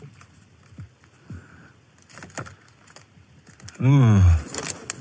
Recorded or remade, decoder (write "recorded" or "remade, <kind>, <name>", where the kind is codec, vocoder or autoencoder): recorded